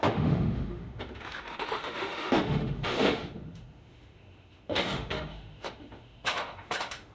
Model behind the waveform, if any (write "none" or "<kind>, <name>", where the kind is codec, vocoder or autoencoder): autoencoder, DAC-VAE